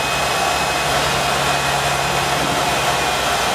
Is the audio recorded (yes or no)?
yes